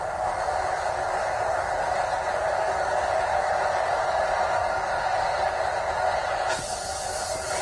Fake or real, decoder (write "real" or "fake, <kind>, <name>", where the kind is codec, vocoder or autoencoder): real